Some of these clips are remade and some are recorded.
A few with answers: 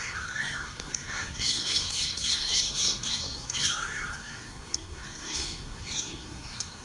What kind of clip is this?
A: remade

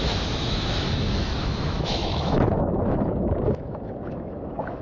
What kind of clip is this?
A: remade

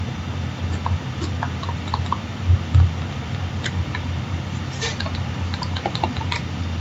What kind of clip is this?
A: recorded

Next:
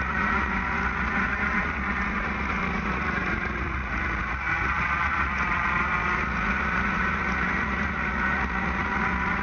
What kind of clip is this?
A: remade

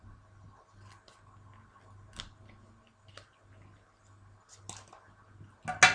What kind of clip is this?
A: recorded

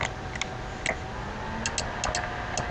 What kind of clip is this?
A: recorded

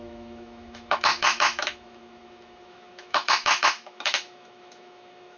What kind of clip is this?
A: remade